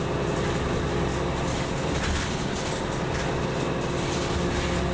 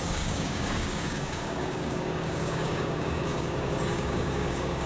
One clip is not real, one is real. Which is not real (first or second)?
second